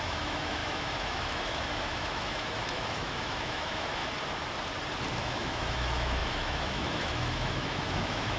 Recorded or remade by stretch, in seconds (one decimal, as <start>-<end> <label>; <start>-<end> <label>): 0.0-4.0 remade; 4.0-5.1 recorded; 5.1-8.4 remade